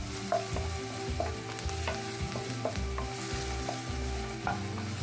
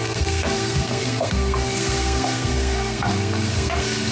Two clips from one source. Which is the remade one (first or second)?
second